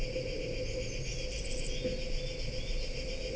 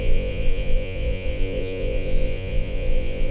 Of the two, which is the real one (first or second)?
first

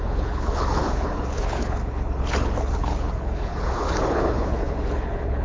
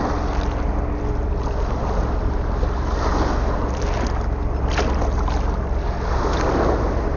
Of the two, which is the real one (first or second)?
second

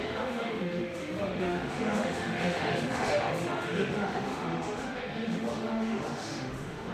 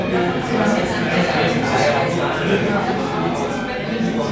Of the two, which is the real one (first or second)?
second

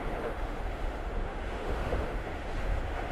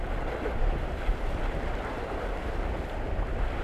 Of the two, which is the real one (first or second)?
second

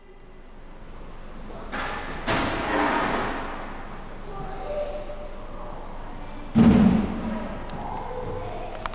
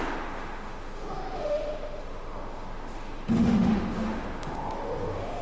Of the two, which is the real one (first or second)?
first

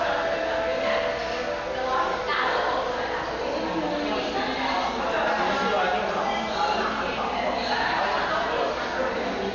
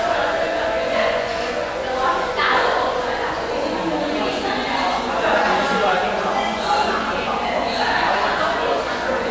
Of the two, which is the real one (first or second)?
first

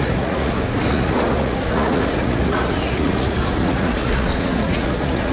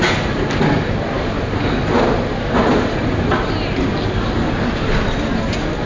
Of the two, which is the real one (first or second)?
second